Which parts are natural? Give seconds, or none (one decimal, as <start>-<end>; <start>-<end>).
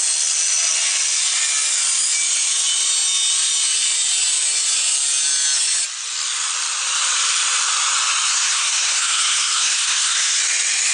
0.0-8.3; 10.4-10.9